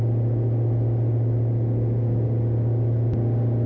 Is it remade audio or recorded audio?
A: recorded